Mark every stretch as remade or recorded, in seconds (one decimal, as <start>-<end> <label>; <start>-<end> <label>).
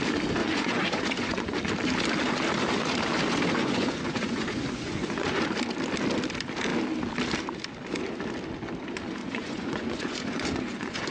0.0-0.4 recorded; 0.4-1.6 remade; 1.6-3.6 recorded; 3.6-5.4 remade; 5.4-9.2 recorded; 9.2-11.1 remade